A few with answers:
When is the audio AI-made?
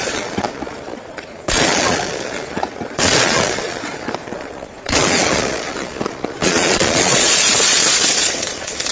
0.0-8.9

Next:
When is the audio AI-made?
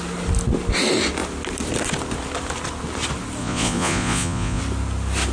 3.4-4.6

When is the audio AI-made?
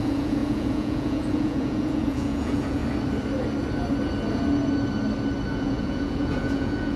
0.0-2.8; 5.5-7.0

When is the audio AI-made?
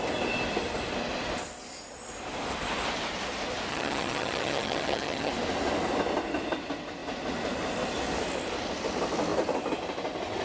3.7-5.3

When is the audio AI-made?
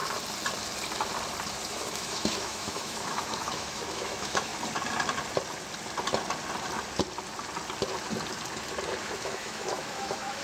1.7-4.5; 9.0-10.4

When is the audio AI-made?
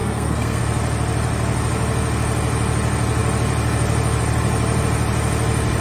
0.0-0.6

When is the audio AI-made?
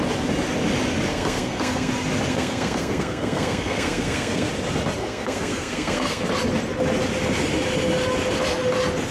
1.1-1.9; 2.3-4.5; 5.0-6.2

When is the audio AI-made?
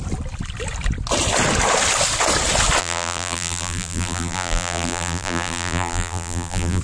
2.8-6.8